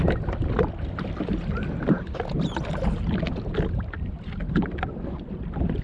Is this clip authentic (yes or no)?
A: yes